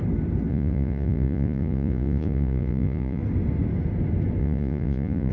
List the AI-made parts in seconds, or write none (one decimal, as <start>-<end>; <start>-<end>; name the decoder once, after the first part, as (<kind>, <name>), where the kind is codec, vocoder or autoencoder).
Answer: 0.5-3.2 (vocoder, Vocos); 4.4-5.3